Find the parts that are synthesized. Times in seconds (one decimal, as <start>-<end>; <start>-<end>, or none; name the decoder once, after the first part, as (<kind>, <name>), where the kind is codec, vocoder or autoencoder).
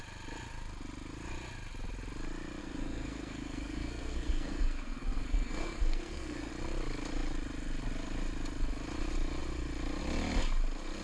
2.6-6.5 (codec, SNAC)